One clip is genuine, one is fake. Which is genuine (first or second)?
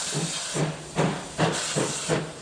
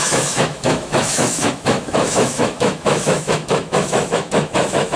first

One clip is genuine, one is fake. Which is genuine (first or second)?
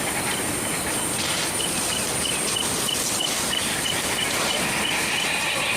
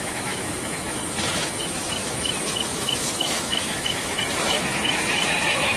first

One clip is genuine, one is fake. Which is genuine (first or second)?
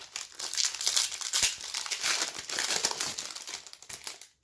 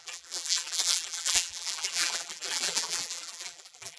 first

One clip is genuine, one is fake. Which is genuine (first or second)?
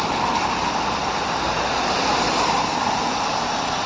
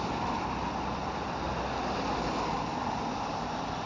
second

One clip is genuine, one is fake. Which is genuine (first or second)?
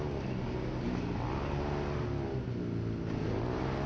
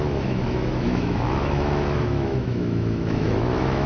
first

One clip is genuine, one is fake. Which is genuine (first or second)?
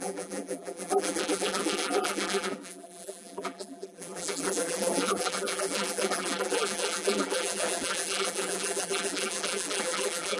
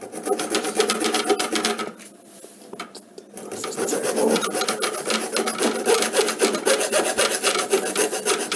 second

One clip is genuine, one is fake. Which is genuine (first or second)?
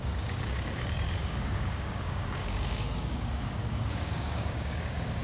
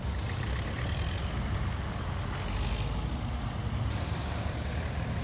second